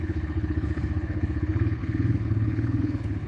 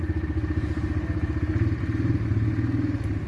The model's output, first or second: first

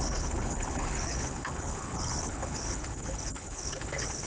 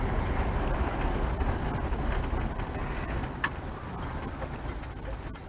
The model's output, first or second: first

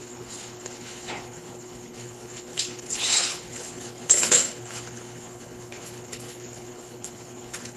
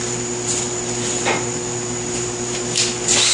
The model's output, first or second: first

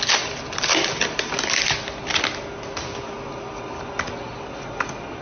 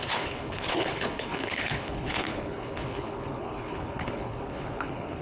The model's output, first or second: second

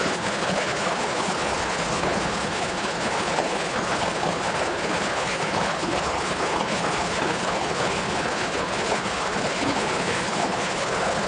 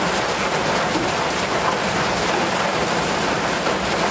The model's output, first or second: first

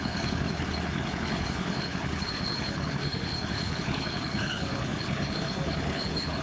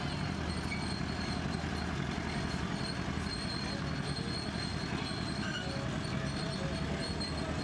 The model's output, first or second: first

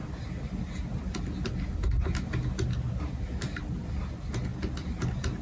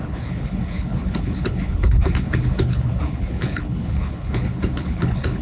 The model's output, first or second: second